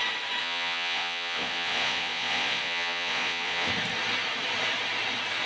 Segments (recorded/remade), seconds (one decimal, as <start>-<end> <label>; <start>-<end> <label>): 0.0-0.4 recorded; 0.4-3.7 remade; 3.7-5.5 recorded